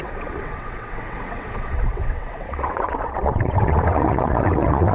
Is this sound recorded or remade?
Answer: remade